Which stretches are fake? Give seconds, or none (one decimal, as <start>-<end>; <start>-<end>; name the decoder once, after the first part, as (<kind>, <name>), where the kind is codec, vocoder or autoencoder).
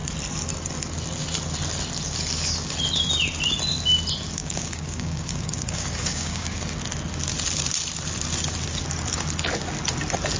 4.4-6.6 (codec, DAC)